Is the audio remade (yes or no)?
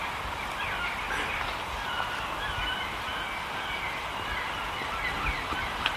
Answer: no